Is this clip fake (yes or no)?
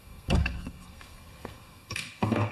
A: yes